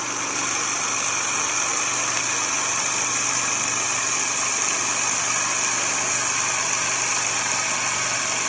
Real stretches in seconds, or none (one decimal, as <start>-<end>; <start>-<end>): 0.0-8.5